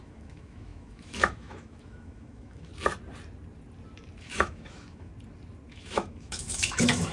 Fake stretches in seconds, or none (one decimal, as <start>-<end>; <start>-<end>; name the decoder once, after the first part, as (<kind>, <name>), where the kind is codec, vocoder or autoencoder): 0.0-2.7 (autoencoder, DAC-VAE); 4.2-5.1; 5.7-7.1